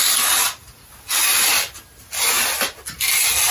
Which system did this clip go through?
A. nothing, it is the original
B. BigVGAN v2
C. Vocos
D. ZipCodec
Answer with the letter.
A